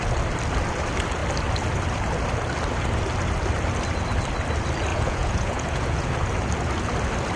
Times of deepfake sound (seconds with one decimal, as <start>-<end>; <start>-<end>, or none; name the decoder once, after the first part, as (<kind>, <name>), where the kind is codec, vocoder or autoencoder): 4.9-6.1 (vocoder, Vocos)